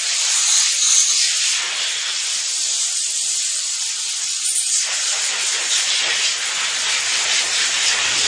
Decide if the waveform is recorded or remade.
remade